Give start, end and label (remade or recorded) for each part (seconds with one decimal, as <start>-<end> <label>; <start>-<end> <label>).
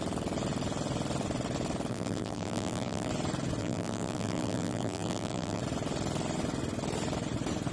0.0-1.9 recorded; 1.9-3.1 remade; 3.1-3.6 recorded; 3.6-5.6 remade; 5.6-7.7 recorded